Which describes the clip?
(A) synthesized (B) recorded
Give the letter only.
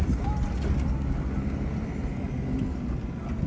B